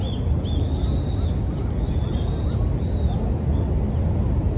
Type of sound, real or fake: real